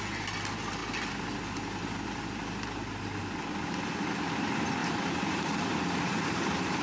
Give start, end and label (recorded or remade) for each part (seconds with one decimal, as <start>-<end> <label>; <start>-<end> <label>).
0.0-4.8 recorded; 4.8-6.8 remade